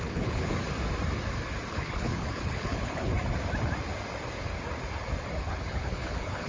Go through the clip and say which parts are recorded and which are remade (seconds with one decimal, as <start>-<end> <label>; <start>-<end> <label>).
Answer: 0.0-0.5 remade; 0.5-1.7 recorded; 1.7-3.1 remade; 3.1-5.4 recorded; 5.4-6.5 remade